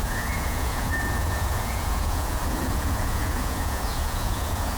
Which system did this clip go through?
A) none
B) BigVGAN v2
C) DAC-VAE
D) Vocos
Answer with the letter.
D